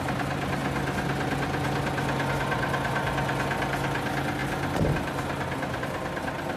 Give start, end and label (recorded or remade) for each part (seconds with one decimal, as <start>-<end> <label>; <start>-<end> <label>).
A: 0.0-6.6 recorded